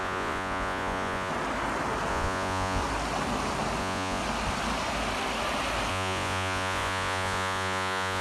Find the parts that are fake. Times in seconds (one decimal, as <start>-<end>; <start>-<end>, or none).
0.0-1.3; 2.1-2.8; 3.8-4.2; 5.9-8.2